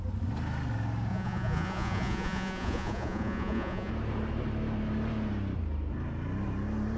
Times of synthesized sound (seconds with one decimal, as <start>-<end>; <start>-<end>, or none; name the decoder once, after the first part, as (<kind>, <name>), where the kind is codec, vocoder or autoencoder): 1.1-3.9 (vocoder, Vocos)